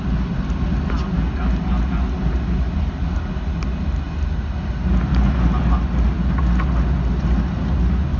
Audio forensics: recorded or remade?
recorded